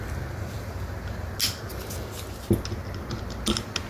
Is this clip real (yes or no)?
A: yes